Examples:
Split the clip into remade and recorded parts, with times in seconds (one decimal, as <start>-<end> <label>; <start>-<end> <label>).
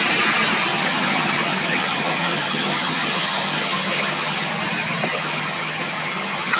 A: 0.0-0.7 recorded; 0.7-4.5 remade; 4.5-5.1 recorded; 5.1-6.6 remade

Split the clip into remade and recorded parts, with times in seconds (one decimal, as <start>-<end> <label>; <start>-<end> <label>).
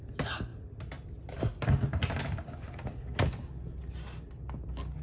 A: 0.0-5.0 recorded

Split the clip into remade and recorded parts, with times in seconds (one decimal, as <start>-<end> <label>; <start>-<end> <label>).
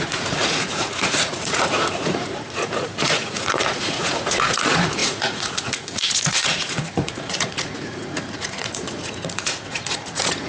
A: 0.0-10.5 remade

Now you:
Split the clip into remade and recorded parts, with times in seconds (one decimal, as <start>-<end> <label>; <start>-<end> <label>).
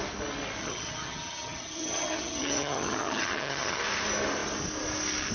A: 0.0-0.6 recorded; 0.6-3.8 remade; 3.8-5.3 recorded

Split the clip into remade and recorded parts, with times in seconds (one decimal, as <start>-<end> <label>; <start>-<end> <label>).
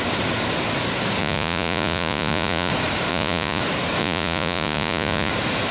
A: 0.0-1.2 recorded; 1.2-2.7 remade; 2.7-3.1 recorded; 3.1-3.6 remade; 3.6-4.0 recorded; 4.0-5.3 remade; 5.3-5.7 recorded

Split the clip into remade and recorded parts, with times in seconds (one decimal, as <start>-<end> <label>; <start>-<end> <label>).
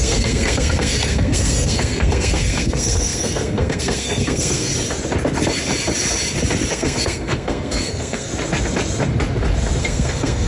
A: 0.0-4.7 remade; 4.7-6.7 recorded; 6.7-8.3 remade; 8.3-9.8 recorded; 9.8-10.5 remade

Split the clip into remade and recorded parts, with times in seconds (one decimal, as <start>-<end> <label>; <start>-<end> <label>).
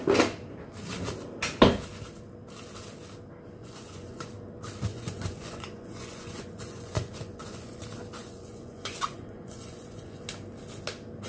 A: 0.0-3.6 recorded; 3.6-4.3 remade; 4.3-4.9 recorded; 4.9-7.8 remade; 7.8-8.2 recorded; 8.2-10.2 remade; 10.2-11.3 recorded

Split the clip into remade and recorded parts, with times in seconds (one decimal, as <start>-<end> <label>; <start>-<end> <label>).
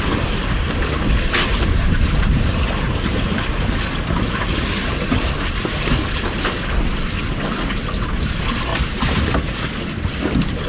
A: 0.0-1.5 recorded; 1.5-5.5 remade; 5.5-8.7 recorded; 8.7-9.6 remade; 9.6-10.7 recorded